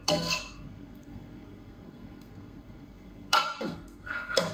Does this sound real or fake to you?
fake